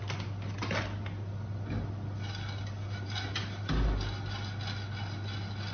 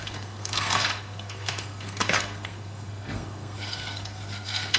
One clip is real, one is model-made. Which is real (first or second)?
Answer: first